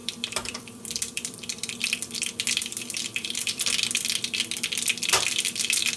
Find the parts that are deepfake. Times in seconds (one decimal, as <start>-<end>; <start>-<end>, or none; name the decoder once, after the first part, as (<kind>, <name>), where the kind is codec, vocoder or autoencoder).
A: 0.0-1.7 (vocoder, BigVGAN v2); 2.6-3.6